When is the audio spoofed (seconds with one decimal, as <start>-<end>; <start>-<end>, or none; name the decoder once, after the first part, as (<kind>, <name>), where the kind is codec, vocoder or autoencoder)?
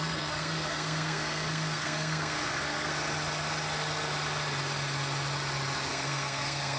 0.0-2.9 (codec, SNAC); 5.9-6.8